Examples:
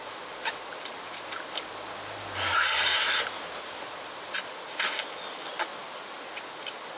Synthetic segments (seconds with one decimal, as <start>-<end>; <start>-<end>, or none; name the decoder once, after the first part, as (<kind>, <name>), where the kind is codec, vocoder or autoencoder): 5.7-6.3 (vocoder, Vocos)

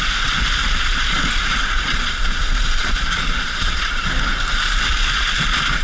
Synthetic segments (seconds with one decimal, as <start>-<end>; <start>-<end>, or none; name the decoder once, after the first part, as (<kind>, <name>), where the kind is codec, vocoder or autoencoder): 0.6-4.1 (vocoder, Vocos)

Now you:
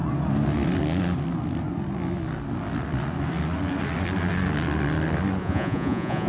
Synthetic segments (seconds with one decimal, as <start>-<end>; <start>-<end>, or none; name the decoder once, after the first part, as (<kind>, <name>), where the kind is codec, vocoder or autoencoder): 5.4-6.3 (vocoder, Vocos)

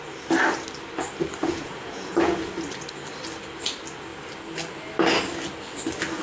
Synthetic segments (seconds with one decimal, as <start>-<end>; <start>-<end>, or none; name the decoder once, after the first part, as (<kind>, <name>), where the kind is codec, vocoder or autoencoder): 1.4-2.5 (vocoder, Vocos)

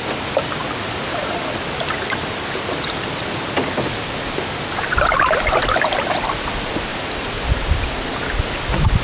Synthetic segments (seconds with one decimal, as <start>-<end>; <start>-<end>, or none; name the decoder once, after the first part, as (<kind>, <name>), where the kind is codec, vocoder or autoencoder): none